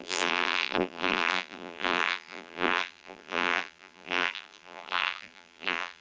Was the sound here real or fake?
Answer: fake